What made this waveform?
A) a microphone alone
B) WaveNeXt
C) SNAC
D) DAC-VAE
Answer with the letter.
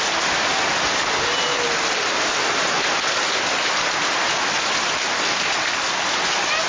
A